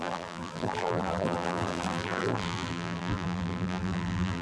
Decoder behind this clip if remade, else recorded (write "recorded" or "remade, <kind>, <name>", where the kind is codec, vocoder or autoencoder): remade, vocoder, BigVGAN v2